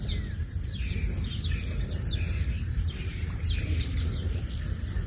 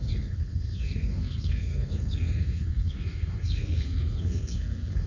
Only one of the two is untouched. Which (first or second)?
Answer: first